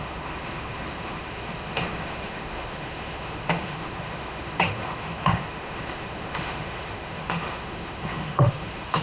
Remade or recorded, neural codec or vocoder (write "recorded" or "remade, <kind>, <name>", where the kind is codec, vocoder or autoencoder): remade, autoencoder, DAC-VAE